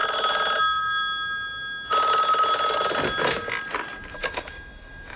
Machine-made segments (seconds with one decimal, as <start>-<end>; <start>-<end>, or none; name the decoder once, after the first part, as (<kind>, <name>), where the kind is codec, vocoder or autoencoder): 0.6-1.0 (autoencoder, DAC-VAE); 4.1-5.2